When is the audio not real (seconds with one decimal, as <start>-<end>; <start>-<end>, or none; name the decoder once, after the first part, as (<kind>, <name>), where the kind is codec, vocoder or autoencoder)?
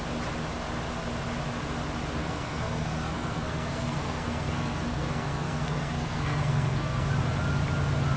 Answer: 2.2-7.1 (codec, SNAC)